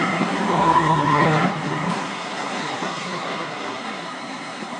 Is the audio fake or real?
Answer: fake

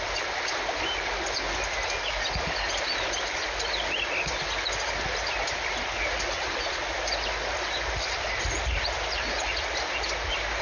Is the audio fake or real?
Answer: real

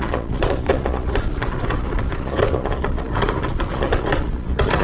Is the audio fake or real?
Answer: fake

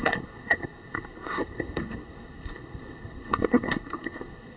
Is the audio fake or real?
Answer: fake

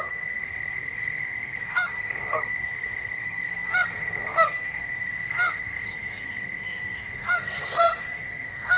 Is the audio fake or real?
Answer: fake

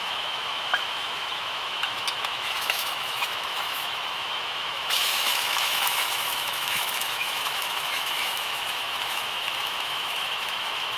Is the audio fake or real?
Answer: fake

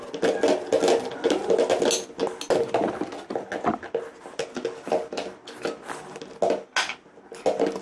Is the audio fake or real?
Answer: real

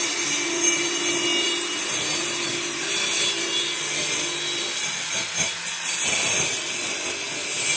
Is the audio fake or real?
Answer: real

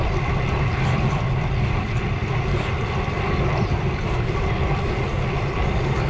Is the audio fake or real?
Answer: fake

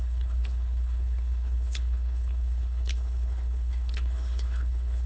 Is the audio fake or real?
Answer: fake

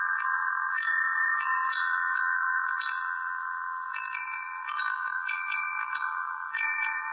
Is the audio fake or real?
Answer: fake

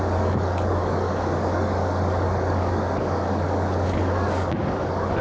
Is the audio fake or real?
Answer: fake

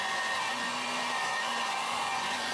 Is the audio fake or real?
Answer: fake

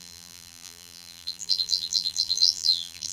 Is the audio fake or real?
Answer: fake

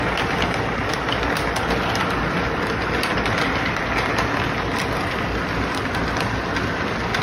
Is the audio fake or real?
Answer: real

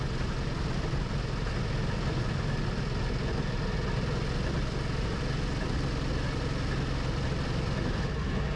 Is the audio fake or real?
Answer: real